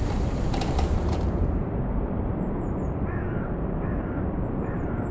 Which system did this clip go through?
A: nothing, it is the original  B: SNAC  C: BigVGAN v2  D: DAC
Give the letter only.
C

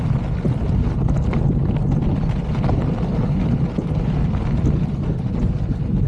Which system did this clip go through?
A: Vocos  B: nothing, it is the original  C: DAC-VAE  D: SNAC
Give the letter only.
B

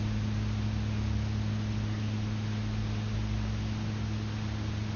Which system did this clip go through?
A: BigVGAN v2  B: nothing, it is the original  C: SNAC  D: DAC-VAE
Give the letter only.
B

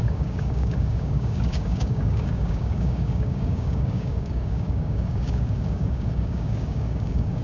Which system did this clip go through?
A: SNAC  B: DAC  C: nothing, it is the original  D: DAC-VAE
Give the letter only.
B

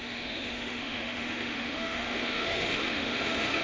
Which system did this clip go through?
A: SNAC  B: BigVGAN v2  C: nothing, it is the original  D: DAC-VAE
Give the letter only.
D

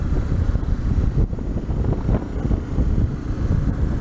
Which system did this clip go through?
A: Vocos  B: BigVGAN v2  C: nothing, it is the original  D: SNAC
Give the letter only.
C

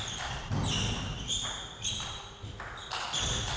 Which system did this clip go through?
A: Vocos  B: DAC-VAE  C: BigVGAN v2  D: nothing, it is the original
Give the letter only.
D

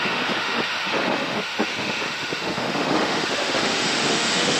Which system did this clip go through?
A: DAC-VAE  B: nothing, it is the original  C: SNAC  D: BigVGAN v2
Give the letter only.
A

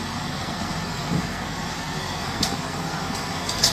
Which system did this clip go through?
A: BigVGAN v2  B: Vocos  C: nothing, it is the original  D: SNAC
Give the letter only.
D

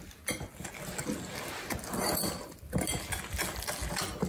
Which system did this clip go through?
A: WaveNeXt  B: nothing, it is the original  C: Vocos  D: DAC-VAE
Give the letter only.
B